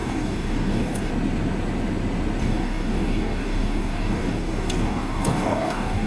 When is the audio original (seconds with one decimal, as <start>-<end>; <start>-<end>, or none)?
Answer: 1.1-2.4